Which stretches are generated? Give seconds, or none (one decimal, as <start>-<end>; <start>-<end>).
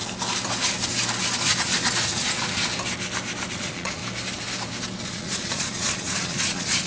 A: 1.2-2.6; 3.5-4.0; 5.0-6.9